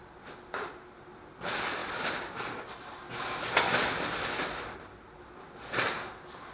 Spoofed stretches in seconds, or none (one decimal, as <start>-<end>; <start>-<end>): none